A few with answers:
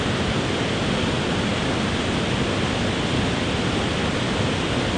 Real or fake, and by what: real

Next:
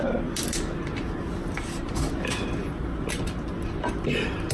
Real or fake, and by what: real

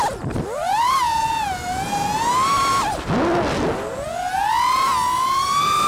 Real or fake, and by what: real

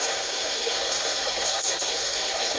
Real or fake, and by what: fake, codec, SNAC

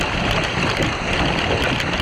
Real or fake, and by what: real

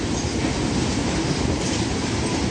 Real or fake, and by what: fake, vocoder, BigVGAN v2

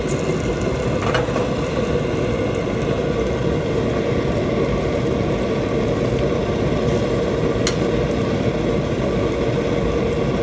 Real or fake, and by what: real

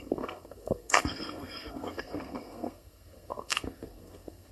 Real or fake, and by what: fake, codec, SNAC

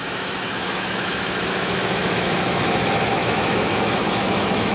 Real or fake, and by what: fake, autoencoder, DAC-VAE